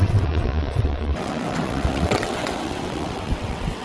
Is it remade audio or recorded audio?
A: remade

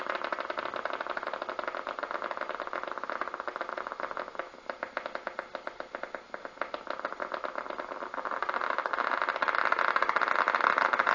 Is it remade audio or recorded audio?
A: recorded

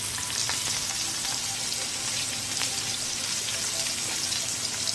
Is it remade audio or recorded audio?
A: recorded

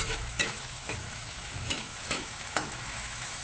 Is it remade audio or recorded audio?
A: remade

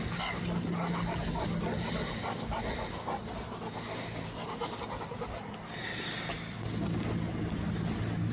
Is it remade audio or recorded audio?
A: recorded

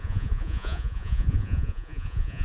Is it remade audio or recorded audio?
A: remade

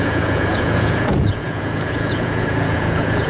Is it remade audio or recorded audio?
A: remade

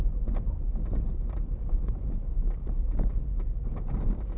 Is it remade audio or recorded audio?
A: recorded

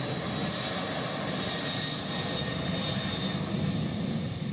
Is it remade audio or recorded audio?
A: recorded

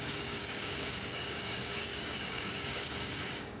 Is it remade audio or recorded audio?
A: remade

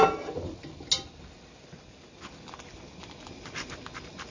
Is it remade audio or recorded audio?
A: recorded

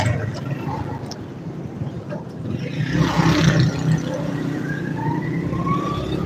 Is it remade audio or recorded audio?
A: recorded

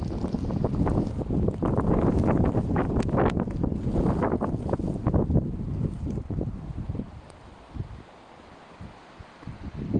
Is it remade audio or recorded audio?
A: recorded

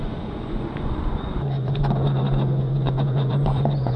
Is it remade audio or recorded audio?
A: remade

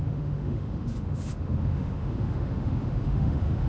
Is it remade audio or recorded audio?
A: remade